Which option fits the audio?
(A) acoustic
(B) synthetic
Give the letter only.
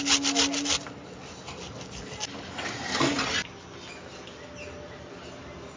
A